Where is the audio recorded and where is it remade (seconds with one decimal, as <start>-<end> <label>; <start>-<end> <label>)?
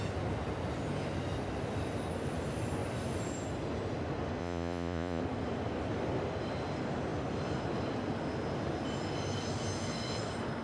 0.0-4.4 recorded; 4.4-5.2 remade; 5.2-10.6 recorded